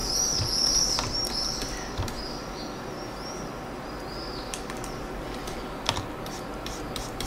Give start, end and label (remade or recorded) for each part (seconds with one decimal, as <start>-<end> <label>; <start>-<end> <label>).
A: 0.0-7.3 recorded